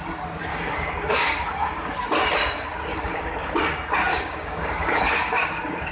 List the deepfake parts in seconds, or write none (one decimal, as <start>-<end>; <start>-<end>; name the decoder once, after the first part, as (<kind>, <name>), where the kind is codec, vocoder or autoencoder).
0.5-1.9 (codec, DAC); 2.9-3.6; 4.1-5.0